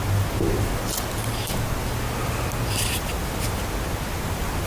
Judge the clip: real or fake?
real